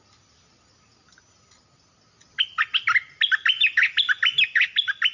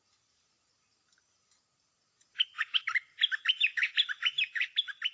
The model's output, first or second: second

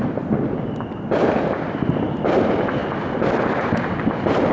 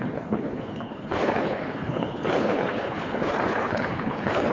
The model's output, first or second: second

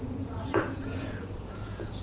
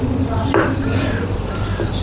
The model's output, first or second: first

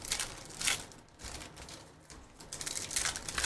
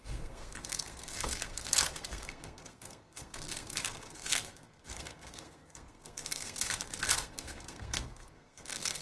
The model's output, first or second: second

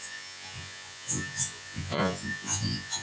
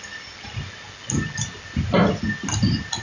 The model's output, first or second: first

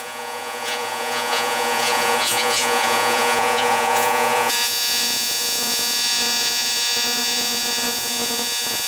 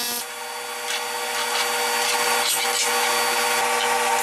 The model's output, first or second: first